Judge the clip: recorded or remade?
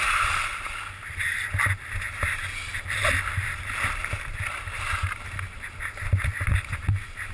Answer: recorded